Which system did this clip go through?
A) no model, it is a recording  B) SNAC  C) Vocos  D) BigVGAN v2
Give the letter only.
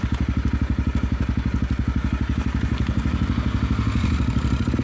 A